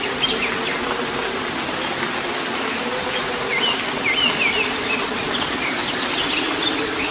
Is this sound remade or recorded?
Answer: recorded